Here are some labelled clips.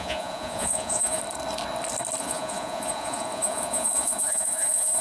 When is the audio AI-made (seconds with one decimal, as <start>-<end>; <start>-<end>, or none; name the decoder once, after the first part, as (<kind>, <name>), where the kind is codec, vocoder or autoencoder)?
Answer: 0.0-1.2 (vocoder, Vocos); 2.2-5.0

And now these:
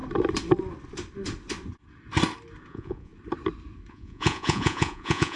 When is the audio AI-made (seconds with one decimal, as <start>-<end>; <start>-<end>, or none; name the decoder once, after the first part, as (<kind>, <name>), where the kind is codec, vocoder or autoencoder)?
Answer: 2.7-3.1 (vocoder, Vocos); 3.9-5.4

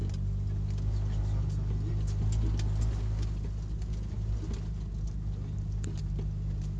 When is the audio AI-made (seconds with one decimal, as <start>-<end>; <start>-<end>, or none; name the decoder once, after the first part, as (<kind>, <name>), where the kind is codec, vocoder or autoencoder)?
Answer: none